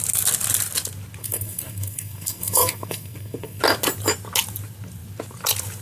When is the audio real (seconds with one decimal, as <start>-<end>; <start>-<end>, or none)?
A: 0.0-1.2; 3.6-5.8